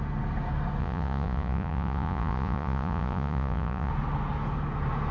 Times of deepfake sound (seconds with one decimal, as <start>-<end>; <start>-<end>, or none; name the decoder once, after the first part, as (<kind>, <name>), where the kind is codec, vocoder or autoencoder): 0.8-3.9 (vocoder, Vocos)